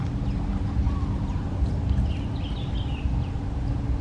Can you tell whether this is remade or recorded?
recorded